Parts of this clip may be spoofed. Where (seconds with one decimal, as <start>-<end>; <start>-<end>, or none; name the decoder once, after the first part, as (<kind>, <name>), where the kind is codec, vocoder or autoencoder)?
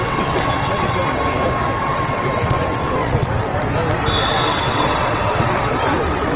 0.0-1.0 (vocoder, WaveNeXt); 1.8-3.5; 4.2-6.4